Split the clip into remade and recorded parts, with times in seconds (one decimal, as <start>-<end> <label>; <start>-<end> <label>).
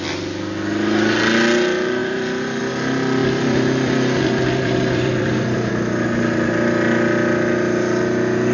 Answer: 0.0-2.0 recorded; 2.0-2.6 remade; 2.6-3.2 recorded; 3.2-5.7 remade; 5.7-8.5 recorded